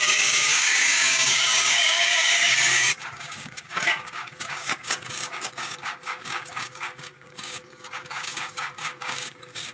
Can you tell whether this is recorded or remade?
remade